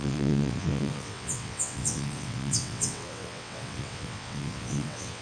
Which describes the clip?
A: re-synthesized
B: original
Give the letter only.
A